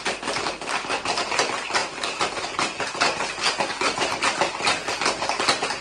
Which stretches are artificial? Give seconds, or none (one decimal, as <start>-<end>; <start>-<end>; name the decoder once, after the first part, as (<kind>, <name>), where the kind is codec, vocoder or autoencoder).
none